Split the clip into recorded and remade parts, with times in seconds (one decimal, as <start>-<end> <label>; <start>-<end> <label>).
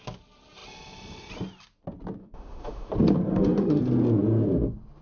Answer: 0.0-2.2 recorded; 2.2-2.9 remade; 2.9-3.3 recorded; 3.3-3.8 remade; 3.8-5.0 recorded